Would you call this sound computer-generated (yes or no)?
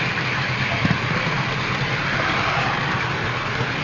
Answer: no